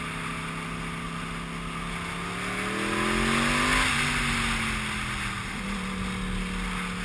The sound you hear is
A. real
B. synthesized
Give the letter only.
A